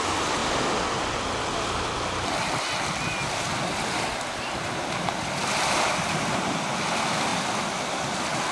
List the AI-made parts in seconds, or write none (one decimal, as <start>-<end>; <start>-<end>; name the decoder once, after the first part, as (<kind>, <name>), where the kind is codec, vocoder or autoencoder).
none